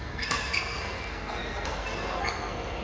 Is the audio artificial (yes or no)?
yes